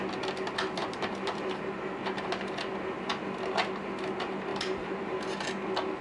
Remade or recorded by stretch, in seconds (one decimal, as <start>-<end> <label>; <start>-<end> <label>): 0.0-0.8 recorded; 0.8-2.5 remade; 2.5-4.5 recorded; 4.5-5.2 remade; 5.2-6.0 recorded